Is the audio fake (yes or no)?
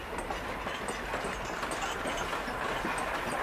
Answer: no